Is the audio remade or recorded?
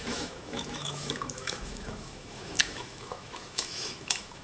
remade